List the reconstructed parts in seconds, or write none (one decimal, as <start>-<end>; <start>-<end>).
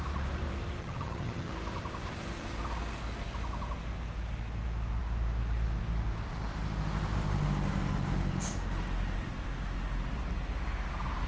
0.8-1.5